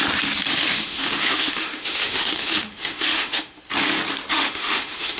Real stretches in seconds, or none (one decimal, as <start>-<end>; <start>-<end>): 0.0-0.5; 3.6-4.3